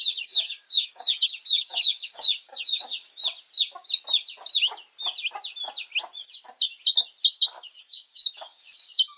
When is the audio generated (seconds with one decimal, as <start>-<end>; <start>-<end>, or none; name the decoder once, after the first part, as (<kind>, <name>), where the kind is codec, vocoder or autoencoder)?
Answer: 0.0-3.2 (codec, DAC); 7.3-9.2